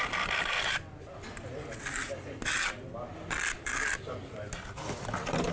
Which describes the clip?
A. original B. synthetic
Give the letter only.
A